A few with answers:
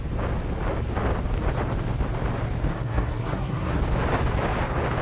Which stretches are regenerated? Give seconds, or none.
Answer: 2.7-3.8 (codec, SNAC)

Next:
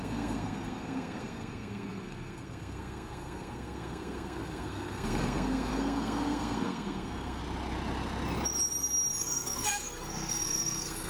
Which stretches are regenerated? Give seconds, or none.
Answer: 0.0-7.4 (codec, SNAC); 9.2-11.1

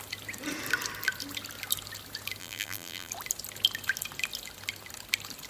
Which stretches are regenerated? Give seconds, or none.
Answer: 2.4-3.1 (vocoder, BigVGAN v2)

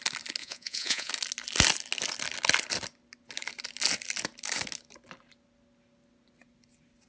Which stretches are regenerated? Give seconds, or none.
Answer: 0.4-1.1 (vocoder, Vocos)

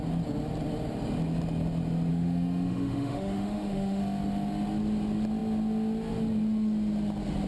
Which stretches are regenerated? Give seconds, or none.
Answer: 2.1-4.0 (autoencoder, DAC-VAE)

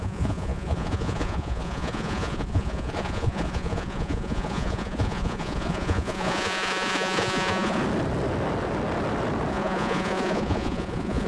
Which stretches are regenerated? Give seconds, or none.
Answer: 0.0-7.8 (vocoder, Vocos); 9.5-11.3

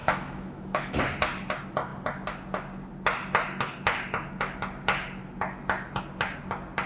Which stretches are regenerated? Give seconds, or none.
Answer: 0.0-1.0 (autoencoder, DAC-VAE)